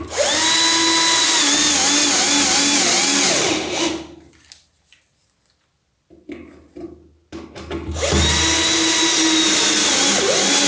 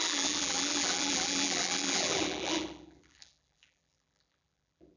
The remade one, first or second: second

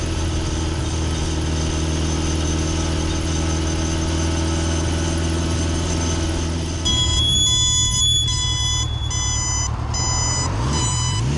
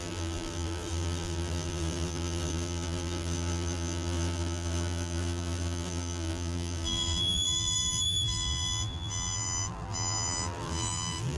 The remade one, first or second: second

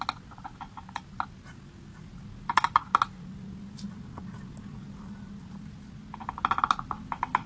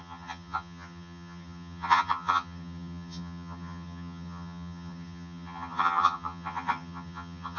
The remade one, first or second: second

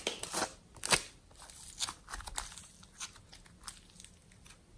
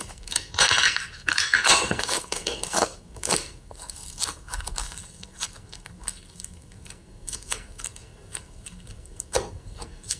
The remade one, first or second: second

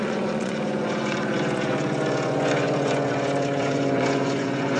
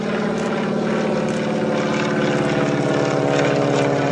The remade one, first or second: first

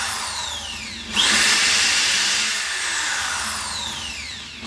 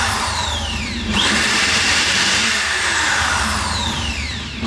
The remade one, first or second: second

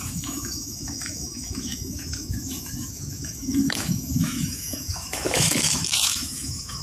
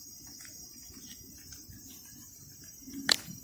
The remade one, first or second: first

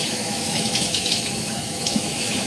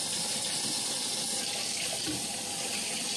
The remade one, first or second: first